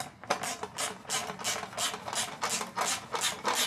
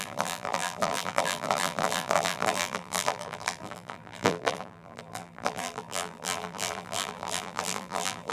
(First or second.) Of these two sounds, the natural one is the first